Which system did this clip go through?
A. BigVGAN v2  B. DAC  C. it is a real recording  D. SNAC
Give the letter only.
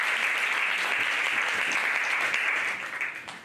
C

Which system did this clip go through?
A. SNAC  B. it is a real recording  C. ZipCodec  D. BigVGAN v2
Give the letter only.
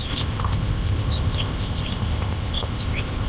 C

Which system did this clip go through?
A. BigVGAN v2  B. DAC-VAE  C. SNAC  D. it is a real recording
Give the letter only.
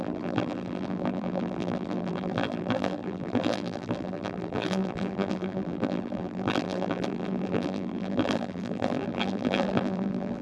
A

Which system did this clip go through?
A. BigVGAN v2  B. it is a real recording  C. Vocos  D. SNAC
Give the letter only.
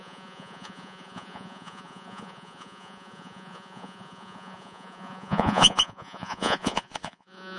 C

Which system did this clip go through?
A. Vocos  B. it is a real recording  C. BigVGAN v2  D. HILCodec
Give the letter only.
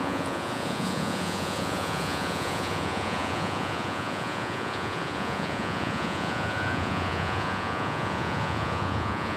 A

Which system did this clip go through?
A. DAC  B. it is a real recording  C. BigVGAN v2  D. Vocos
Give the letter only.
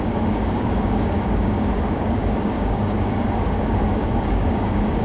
A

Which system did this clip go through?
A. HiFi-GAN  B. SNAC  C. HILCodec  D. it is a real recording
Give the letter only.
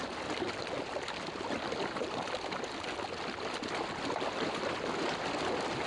D